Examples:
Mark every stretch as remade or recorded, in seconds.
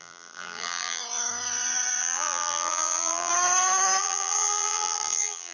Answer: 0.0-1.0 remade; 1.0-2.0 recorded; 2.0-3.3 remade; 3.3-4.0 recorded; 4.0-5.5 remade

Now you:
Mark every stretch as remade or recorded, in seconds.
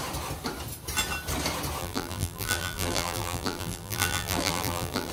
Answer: 0.0-1.8 recorded; 1.8-5.1 remade